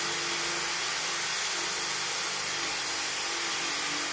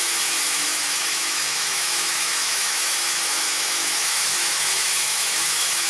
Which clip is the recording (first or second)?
first